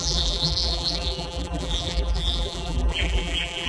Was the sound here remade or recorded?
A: remade